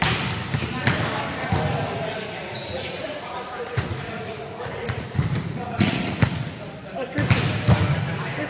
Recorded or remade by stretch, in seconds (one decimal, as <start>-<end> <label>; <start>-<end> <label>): 0.0-2.4 recorded; 2.4-6.5 remade; 6.5-8.5 recorded

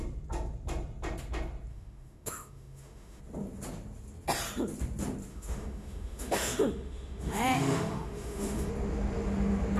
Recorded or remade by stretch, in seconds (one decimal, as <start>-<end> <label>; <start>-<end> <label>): 0.0-1.7 recorded; 1.7-3.2 remade; 3.2-5.3 recorded; 5.3-8.7 remade; 8.7-9.8 recorded

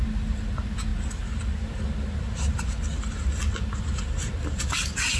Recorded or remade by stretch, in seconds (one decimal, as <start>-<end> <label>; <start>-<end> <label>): 0.0-5.2 recorded

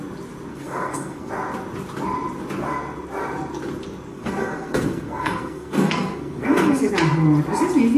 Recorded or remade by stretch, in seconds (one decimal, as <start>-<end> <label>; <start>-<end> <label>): 0.0-0.5 recorded; 0.5-1.3 remade; 1.3-4.1 recorded; 4.1-6.9 remade; 6.9-8.0 recorded

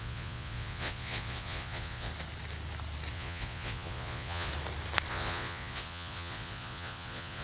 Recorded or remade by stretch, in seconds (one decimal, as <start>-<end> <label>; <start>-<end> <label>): 0.0-2.1 remade; 2.1-3.1 recorded; 3.1-4.5 remade; 4.5-5.1 recorded; 5.1-7.4 remade

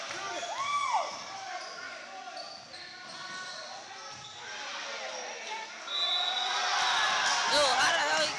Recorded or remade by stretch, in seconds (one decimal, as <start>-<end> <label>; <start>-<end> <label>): 0.0-8.4 recorded

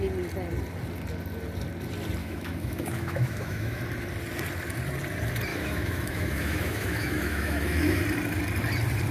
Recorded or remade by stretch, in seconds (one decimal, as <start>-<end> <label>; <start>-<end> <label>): 0.0-2.2 recorded; 2.2-3.8 remade; 3.8-5.5 recorded; 5.5-8.0 remade; 8.0-9.1 recorded

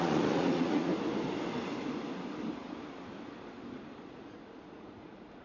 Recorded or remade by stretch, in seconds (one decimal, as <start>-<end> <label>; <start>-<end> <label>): 0.0-0.9 remade; 0.9-4.1 recorded; 4.1-5.4 remade